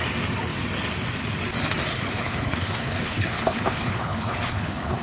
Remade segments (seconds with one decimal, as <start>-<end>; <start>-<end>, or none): 1.9-5.0